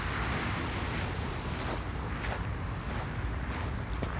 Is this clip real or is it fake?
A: real